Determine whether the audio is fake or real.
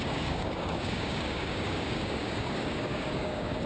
fake